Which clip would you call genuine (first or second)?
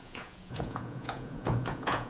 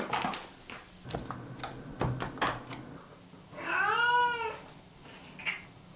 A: second